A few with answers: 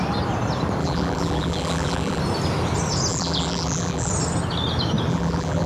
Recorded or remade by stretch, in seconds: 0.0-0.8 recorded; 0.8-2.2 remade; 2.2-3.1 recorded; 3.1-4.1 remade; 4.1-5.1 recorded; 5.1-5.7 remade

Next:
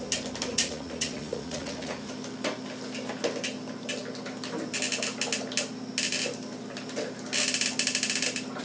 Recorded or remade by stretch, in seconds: 0.0-0.5 recorded; 0.5-2.1 remade; 2.1-8.6 recorded

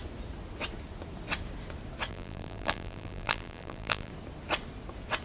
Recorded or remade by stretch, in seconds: 0.0-2.1 recorded; 2.1-4.1 remade; 4.1-5.2 recorded

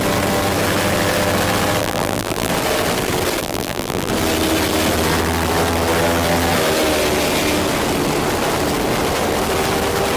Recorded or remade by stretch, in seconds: 0.0-1.8 recorded; 1.8-2.5 remade; 2.5-3.4 recorded; 3.4-4.1 remade; 4.1-10.2 recorded

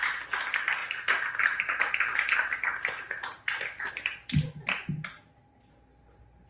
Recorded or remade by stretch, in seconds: 0.0-6.5 recorded

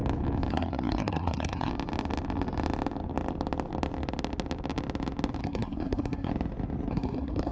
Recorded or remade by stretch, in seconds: 0.0-0.5 recorded; 0.5-1.7 remade; 1.7-5.4 recorded; 5.4-6.3 remade; 6.3-6.9 recorded; 6.9-7.5 remade